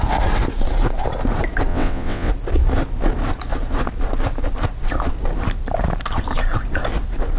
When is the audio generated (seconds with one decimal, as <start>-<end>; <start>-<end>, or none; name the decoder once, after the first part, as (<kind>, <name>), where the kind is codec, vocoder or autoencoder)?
1.7-2.3 (vocoder, WaveNeXt)